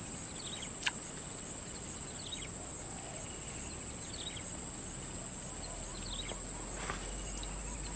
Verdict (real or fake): real